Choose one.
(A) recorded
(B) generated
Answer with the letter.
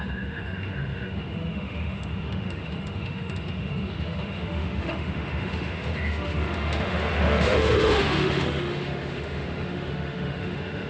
B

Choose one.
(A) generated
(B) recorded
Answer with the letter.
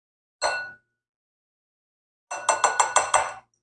B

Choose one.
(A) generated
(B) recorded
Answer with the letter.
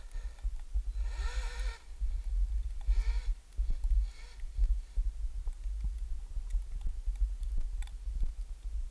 B